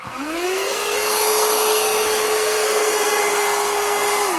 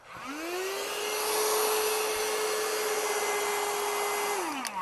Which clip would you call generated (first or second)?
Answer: first